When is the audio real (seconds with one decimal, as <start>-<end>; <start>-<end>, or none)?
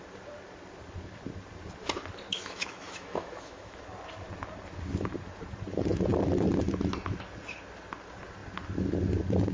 0.0-2.3; 3.8-9.5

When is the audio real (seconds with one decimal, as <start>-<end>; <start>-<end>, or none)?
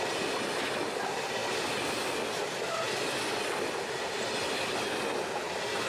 0.0-5.9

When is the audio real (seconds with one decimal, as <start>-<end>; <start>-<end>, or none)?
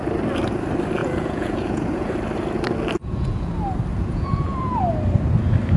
0.0-1.0; 2.1-3.0; 3.5-3.9; 4.8-5.8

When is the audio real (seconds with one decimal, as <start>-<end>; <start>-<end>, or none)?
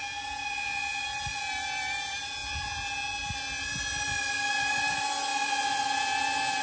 0.0-6.6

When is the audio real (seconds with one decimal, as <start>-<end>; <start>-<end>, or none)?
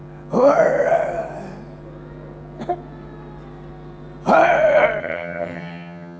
0.0-5.0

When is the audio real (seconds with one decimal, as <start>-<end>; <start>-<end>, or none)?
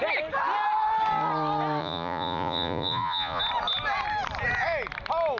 0.0-1.8; 3.4-5.4